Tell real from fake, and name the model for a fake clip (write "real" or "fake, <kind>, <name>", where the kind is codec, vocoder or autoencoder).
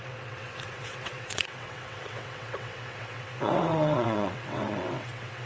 fake, vocoder, WaveNeXt